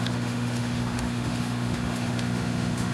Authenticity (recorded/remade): remade